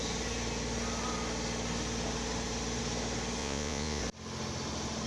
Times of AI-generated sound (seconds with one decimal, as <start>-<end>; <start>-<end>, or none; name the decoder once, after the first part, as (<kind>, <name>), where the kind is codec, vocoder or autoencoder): 3.4-4.0 (vocoder, Vocos)